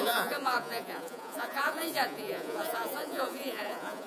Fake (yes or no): yes